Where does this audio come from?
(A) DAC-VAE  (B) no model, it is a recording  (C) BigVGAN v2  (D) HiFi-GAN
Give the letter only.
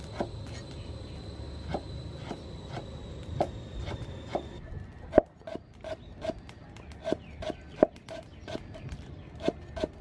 B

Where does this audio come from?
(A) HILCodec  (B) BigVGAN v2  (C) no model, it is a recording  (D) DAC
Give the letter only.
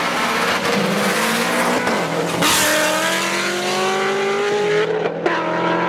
C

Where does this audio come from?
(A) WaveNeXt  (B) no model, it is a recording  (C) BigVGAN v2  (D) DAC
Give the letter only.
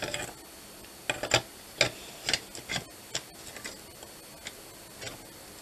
B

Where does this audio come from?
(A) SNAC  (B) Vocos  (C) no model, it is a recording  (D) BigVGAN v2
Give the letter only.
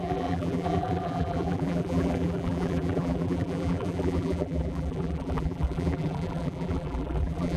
D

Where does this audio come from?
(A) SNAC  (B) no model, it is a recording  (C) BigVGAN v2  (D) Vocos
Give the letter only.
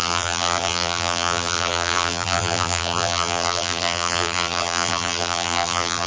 C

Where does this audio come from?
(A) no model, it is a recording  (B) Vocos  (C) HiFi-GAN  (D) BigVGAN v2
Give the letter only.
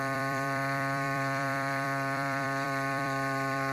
D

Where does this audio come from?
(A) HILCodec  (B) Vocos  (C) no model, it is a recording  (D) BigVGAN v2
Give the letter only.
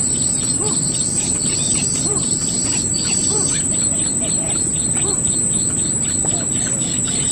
D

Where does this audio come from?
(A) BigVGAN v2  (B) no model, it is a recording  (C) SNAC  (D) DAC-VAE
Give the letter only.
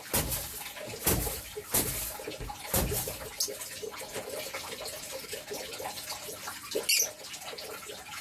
B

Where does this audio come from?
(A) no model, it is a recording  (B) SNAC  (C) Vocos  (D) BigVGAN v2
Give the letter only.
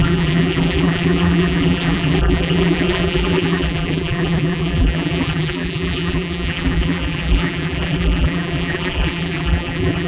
D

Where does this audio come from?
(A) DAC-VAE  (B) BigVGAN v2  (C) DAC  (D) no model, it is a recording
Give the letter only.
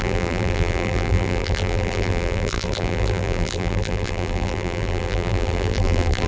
B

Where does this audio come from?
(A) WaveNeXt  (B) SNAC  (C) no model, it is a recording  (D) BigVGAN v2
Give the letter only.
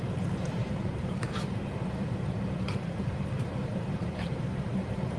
D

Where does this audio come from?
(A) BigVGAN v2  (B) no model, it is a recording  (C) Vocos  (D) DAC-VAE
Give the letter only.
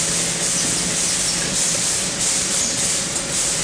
B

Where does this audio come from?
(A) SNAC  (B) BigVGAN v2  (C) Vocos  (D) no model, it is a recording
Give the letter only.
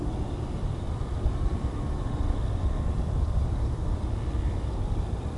B